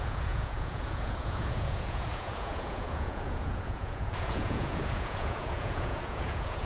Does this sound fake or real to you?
fake